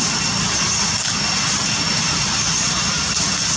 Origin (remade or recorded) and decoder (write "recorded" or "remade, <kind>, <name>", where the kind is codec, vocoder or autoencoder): recorded